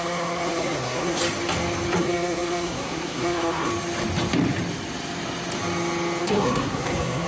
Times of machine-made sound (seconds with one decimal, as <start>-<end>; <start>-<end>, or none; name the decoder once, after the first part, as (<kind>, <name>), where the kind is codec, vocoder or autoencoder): 0.0-1.2 (codec, SNAC); 2.0-3.7; 6.2-7.3